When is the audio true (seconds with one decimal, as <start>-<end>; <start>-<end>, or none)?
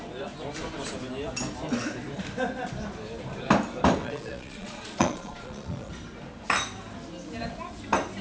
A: 0.0-4.0; 5.9-8.2